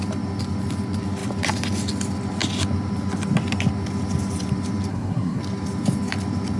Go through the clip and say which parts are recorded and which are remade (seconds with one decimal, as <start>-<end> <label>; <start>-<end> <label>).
0.0-4.9 recorded; 4.9-5.4 remade; 5.4-6.6 recorded